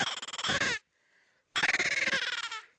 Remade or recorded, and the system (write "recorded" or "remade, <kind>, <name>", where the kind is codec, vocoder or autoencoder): recorded